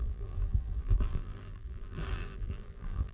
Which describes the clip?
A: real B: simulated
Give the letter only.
B